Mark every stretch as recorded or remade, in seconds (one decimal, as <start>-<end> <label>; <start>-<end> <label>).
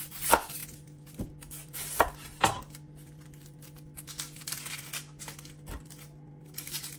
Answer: 0.0-7.0 recorded